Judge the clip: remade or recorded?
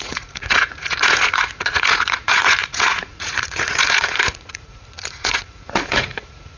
remade